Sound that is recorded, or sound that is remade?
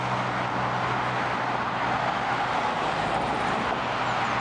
recorded